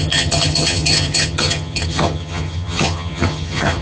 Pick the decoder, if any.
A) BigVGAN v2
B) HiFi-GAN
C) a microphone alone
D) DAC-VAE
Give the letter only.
B